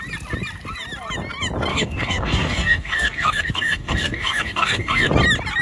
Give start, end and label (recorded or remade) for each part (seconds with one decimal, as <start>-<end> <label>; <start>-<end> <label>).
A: 0.0-1.7 recorded; 1.7-5.1 remade; 5.1-5.6 recorded